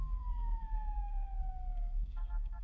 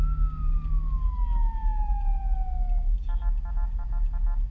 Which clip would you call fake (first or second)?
first